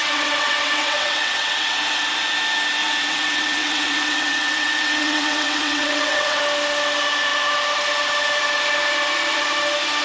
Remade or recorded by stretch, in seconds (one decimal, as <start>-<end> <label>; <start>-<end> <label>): 0.0-1.8 remade; 1.8-2.8 recorded; 2.8-6.4 remade; 6.4-10.0 recorded